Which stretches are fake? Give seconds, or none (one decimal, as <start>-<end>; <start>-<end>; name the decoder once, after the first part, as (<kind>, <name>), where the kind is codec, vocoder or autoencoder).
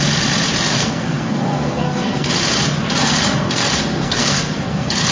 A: 0.7-2.3 (codec, SNAC); 3.0-5.1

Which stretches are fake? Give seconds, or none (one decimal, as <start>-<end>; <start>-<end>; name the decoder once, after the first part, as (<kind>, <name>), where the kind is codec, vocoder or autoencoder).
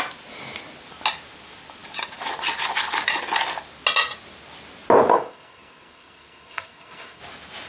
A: 5.1-7.2 (codec, SNAC)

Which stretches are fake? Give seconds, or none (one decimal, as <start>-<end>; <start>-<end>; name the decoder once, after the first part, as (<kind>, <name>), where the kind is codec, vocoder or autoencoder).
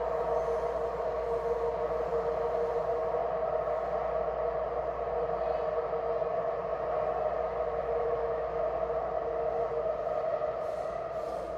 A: 7.8-8.6 (autoencoder, DAC-VAE)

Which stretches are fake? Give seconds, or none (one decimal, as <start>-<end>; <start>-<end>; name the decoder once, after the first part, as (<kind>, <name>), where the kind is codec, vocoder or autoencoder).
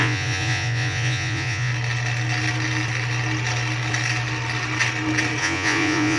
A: 0.0-1.7 (vocoder, Vocos); 5.4-6.2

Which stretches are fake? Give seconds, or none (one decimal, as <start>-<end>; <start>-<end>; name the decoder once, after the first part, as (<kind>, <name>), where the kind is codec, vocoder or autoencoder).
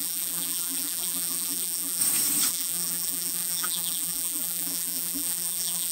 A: 0.0-2.0 (vocoder, BigVGAN v2); 2.5-5.9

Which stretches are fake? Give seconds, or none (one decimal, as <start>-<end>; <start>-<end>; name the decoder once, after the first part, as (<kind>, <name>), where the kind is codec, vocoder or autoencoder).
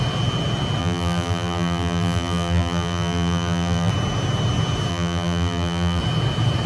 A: 0.8-3.9 (vocoder, BigVGAN v2); 4.9-6.0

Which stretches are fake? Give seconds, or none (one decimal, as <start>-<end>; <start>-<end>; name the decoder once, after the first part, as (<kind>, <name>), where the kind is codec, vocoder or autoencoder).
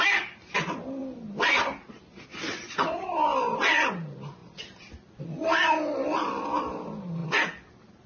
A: none